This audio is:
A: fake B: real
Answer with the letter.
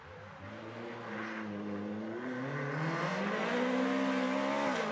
B